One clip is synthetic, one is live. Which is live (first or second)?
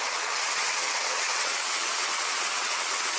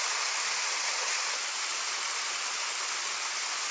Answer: second